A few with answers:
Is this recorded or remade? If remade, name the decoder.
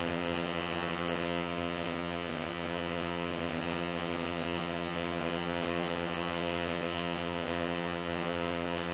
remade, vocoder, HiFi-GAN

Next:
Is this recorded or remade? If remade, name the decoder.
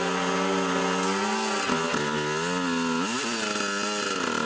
recorded